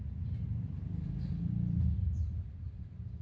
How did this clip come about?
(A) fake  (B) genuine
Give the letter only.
A